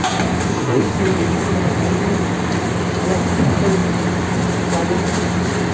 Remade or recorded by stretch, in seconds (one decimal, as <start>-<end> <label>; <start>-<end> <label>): 0.0-0.5 recorded; 0.5-1.0 remade; 1.0-5.7 recorded